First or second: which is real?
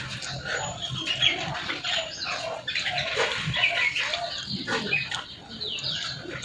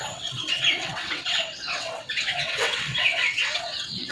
first